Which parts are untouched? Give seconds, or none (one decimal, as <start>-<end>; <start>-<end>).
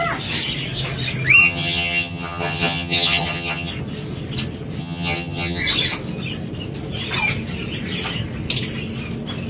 0.0-1.4; 3.7-4.8; 5.6-9.5